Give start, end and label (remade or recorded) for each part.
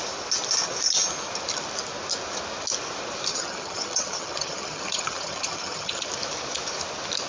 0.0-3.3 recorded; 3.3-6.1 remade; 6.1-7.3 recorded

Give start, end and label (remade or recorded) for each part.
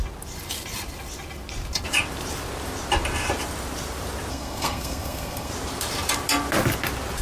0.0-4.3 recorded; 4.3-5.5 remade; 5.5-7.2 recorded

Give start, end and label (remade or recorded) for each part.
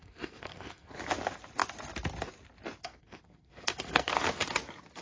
0.0-0.9 remade; 0.9-2.8 recorded; 2.8-4.1 remade; 4.1-5.0 recorded